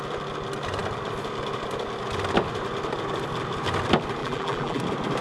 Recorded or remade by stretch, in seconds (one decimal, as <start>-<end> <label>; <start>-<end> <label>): 0.0-4.2 recorded; 4.2-4.8 remade; 4.8-5.2 recorded